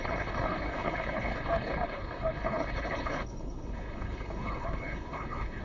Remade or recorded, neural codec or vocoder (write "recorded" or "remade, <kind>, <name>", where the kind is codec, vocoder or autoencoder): remade, codec, HILCodec